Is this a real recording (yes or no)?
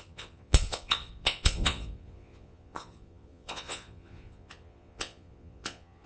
no